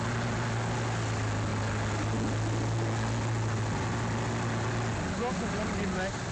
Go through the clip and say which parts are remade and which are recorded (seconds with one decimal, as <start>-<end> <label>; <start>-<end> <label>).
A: 0.0-6.3 recorded